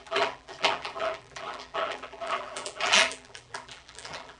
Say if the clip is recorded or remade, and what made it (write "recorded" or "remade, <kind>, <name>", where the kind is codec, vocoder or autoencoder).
remade, vocoder, BigVGAN v2